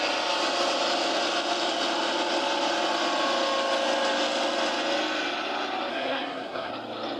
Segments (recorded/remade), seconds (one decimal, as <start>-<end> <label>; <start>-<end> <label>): 0.0-5.9 recorded; 5.9-6.7 remade; 6.7-7.2 recorded